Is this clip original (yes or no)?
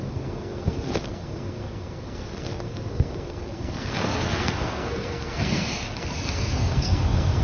no